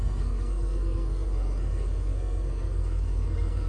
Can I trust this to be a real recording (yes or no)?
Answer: no